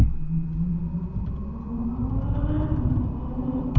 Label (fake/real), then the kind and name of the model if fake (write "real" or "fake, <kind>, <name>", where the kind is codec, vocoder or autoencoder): real